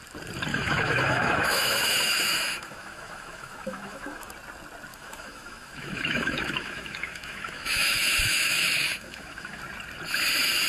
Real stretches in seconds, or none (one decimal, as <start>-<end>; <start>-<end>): 0.0-0.5; 4.3-4.9; 9.6-10.7